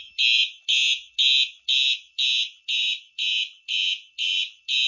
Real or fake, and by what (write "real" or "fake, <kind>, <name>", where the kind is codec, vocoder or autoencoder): real